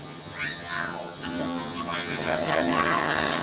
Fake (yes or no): yes